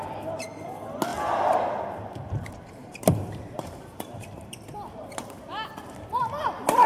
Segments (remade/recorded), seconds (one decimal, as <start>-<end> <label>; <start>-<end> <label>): 0.0-2.8 recorded; 2.8-6.4 remade; 6.4-6.9 recorded